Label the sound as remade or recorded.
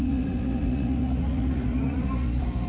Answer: remade